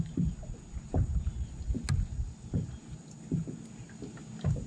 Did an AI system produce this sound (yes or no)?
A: no